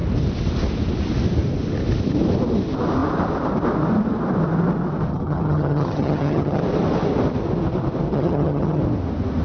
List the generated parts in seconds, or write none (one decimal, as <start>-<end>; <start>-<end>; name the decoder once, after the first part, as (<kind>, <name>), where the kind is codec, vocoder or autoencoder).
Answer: 5.1-6.6 (vocoder, HiFi-GAN); 8.1-8.8